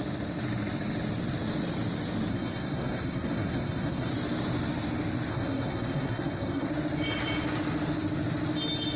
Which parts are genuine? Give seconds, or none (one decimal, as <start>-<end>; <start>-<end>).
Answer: 0.0-2.3; 4.1-5.3; 6.7-9.0